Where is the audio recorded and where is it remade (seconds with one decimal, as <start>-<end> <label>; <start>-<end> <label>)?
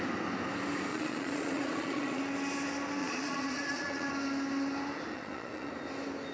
0.0-0.9 recorded; 0.9-2.2 remade; 2.2-3.0 recorded; 3.0-4.1 remade; 4.1-5.1 recorded; 5.1-5.7 remade; 5.7-6.3 recorded